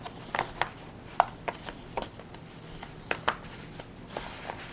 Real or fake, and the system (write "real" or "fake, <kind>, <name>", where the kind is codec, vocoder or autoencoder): real